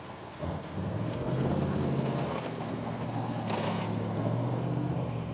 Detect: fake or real fake